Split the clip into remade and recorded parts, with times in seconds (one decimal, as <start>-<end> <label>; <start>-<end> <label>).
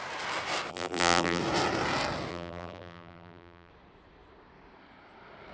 0.0-0.7 recorded; 0.7-1.4 remade; 1.4-2.3 recorded; 2.3-3.7 remade; 3.7-5.5 recorded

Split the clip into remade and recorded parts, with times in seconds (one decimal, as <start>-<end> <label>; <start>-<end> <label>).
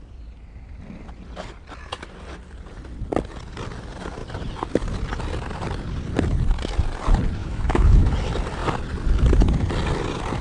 0.0-7.4 recorded; 7.4-8.1 remade; 8.1-10.4 recorded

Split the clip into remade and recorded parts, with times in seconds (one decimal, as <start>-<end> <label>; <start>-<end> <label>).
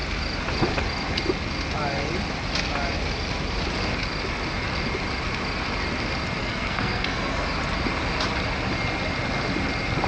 0.0-6.4 recorded; 6.4-7.5 remade; 7.5-10.1 recorded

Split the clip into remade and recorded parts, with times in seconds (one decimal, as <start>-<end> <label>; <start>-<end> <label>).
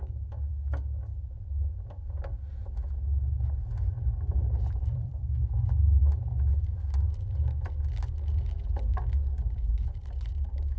0.0-4.4 recorded; 4.4-5.5 remade; 5.5-10.8 recorded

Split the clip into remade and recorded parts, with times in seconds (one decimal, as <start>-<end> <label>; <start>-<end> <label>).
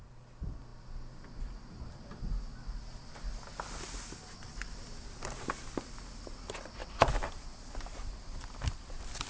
0.0-9.3 recorded